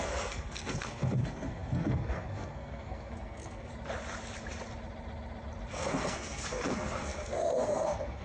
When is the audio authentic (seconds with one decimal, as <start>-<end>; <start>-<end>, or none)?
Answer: 3.7-5.7